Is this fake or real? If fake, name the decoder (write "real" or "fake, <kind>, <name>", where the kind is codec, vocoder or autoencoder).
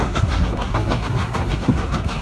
fake, codec, SNAC